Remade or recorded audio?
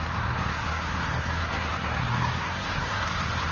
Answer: remade